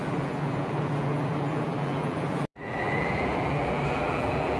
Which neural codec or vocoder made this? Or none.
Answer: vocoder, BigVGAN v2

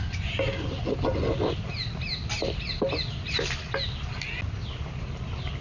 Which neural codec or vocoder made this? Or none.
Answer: none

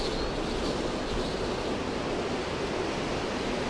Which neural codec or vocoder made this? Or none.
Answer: none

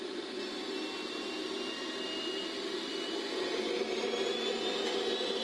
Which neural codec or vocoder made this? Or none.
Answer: none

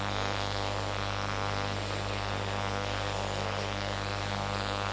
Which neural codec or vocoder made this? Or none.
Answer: codec, SNAC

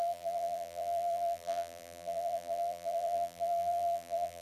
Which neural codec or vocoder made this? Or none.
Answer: vocoder, BigVGAN v2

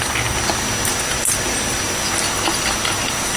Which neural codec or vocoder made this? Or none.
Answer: none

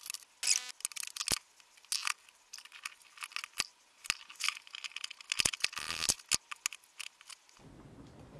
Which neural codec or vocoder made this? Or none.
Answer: none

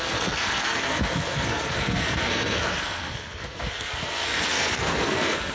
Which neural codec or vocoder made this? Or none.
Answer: codec, SNAC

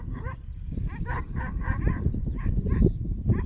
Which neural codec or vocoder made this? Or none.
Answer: vocoder, BigVGAN v2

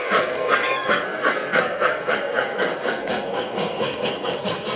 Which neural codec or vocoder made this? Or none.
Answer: codec, SNAC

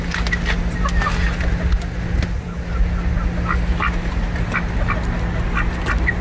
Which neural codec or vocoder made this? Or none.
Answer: none